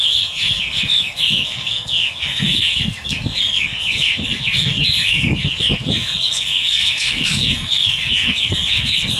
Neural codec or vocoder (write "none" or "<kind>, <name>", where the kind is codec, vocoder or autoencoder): codec, SNAC